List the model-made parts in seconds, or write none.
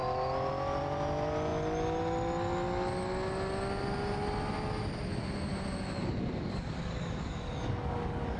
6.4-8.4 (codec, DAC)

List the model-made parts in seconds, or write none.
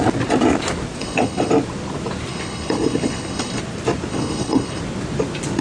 1.0-1.5 (codec, HILCodec); 2.3-3.6; 4.1-4.8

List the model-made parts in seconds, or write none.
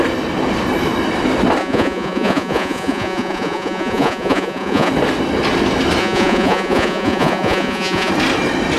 1.6-4.9 (vocoder, Vocos); 6.0-8.1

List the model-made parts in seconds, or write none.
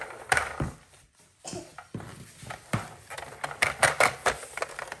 none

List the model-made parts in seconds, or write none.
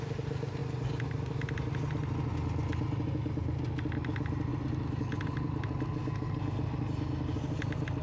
none